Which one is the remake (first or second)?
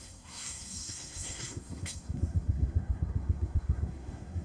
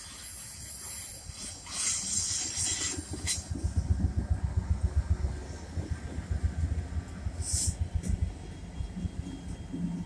first